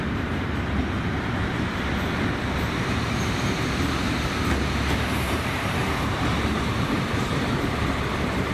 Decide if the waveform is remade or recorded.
remade